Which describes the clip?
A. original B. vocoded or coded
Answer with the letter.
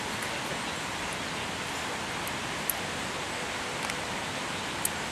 A